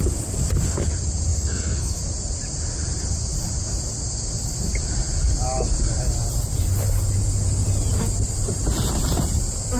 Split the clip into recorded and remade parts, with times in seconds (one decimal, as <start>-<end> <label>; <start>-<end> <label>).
0.0-1.3 recorded; 1.3-2.0 remade; 2.0-9.8 recorded